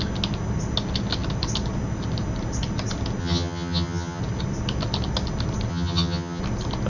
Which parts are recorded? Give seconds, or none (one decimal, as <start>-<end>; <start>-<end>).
0.0-3.2; 4.2-5.7; 6.4-6.9